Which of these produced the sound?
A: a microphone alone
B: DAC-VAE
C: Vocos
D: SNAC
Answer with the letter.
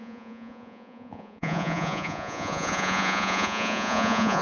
C